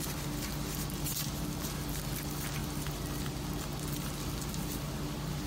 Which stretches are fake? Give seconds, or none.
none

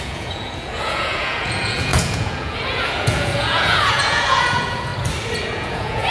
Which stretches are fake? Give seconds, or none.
0.0-4.9 (vocoder, Vocos); 5.4-6.1

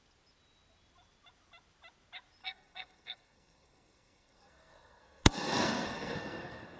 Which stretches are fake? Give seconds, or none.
2.4-6.8 (codec, SNAC)

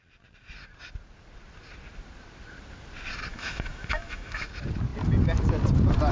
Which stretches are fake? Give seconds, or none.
3.3-4.5 (autoencoder, DAC-VAE)

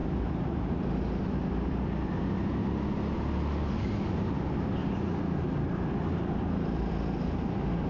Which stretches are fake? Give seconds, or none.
4.8-6.9 (vocoder, BigVGAN v2)

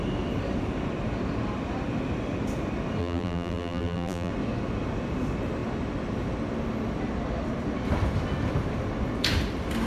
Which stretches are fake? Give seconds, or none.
3.0-4.3 (vocoder, BigVGAN v2)

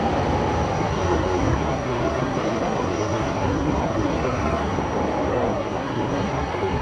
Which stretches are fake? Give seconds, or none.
0.7-4.8 (codec, SNAC); 5.3-6.8

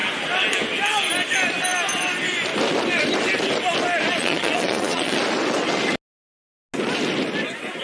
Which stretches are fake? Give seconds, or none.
4.2-5.2 (vocoder, Vocos)